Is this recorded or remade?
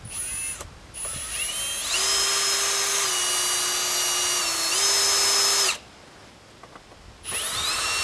recorded